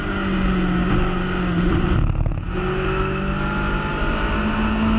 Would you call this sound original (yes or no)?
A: yes